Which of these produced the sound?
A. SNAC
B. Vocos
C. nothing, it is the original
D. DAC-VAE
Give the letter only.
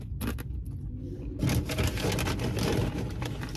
C